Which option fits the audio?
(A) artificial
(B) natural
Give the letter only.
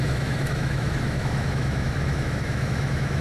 A